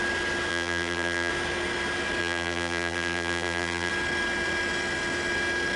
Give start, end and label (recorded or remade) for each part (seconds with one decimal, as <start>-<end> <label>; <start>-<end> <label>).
0.0-0.5 recorded; 0.5-1.3 remade; 1.3-2.2 recorded; 2.2-3.9 remade; 3.9-5.8 recorded